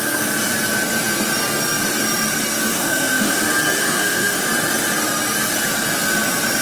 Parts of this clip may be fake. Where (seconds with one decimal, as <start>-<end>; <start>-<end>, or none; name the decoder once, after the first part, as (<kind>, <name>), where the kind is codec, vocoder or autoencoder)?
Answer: 2.7-3.4 (autoencoder, DAC-VAE); 3.8-4.4